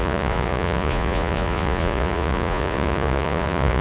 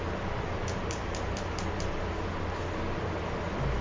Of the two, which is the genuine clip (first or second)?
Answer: second